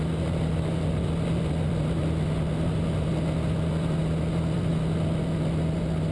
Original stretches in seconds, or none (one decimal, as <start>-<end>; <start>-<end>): 0.0-4.0; 4.7-6.1